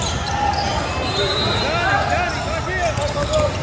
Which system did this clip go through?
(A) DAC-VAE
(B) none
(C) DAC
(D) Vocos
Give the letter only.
B